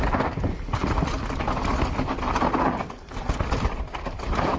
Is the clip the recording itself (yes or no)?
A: yes